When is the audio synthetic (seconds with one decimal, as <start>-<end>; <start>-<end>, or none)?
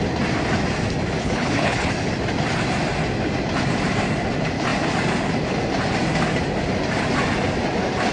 1.2-1.9